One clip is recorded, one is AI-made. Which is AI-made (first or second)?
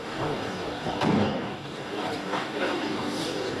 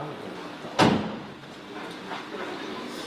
first